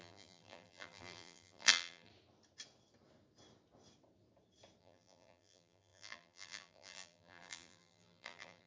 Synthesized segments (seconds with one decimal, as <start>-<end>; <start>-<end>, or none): 0.0-2.1; 4.8-8.7